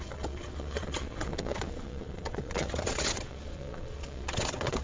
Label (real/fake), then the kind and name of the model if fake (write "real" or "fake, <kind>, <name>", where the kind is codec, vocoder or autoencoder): fake, vocoder, WaveNeXt